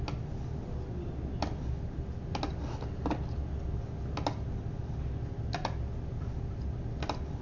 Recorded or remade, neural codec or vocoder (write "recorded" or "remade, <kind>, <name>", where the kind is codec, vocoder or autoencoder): recorded